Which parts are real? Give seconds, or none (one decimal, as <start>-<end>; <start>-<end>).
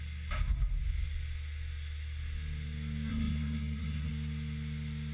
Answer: 0.0-3.1; 4.1-5.1